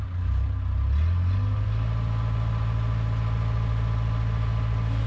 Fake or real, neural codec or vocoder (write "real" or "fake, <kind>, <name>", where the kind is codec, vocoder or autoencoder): real